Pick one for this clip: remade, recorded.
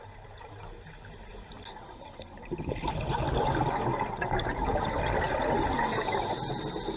recorded